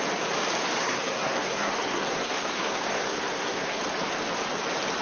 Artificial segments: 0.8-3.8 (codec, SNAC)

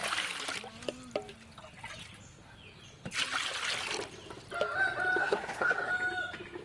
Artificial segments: 5.2-5.9 (codec, SNAC)

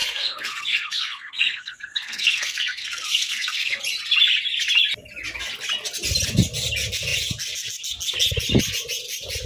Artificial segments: 0.0-3.8 (codec, SNAC)

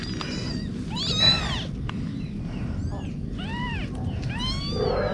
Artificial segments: none

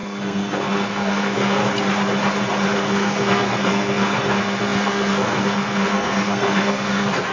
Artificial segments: 0.0-1.6 (codec, SNAC); 2.9-7.3